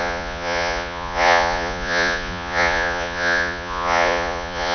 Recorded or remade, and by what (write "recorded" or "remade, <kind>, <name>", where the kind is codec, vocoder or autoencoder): remade, vocoder, Vocos